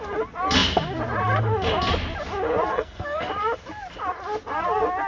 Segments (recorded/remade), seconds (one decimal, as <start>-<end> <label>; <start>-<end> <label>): 0.0-2.7 recorded; 2.7-3.3 remade; 3.3-5.1 recorded